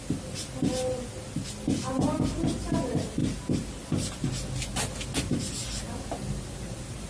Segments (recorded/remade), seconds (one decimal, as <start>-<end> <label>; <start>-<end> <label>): 0.0-7.1 recorded